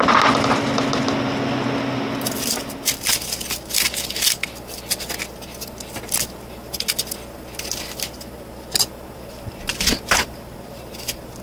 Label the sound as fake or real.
real